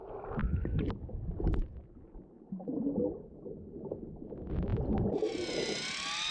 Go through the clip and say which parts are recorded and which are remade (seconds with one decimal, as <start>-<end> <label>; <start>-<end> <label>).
0.0-6.3 recorded